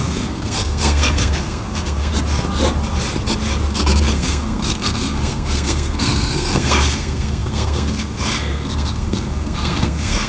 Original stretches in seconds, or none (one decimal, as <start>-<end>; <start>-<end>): 2.1-3.7

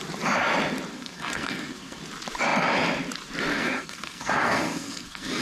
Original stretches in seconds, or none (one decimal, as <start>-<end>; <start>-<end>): 0.0-0.9; 2.0-3.5